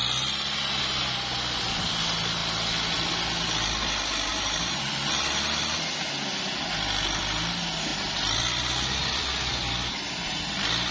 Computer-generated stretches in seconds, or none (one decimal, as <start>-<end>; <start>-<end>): 4.3-4.9